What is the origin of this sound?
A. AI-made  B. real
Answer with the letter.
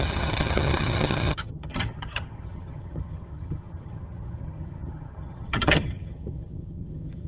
A